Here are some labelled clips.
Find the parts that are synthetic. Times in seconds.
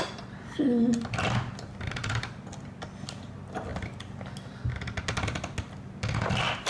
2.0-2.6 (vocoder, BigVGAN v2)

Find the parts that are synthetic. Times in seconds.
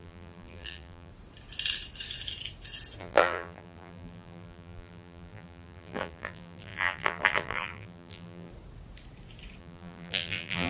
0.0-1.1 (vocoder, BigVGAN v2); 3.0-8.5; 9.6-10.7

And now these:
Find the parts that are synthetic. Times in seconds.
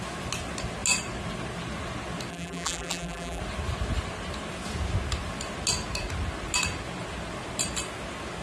2.3-3.4 (vocoder, BigVGAN v2)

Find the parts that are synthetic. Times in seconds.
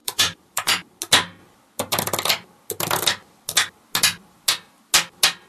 0.0-1.0 (vocoder, BigVGAN v2)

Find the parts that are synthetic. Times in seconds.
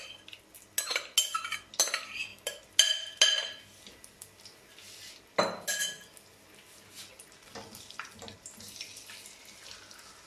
none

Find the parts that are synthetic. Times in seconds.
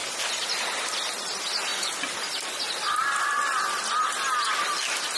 1.7-2.6 (vocoder, BigVGAN v2)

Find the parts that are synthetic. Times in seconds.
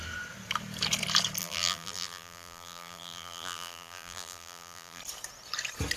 1.4-5.0 (vocoder, BigVGAN v2)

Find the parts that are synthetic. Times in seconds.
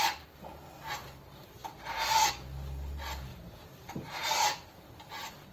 1.6-2.3 (vocoder, BigVGAN v2); 3.3-4.3